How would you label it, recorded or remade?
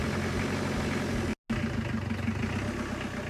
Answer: recorded